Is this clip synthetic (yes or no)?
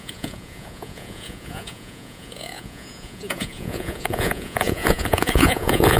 yes